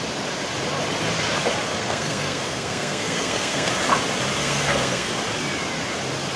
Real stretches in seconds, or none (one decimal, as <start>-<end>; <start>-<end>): 0.0-1.7; 3.7-4.4; 5.1-6.4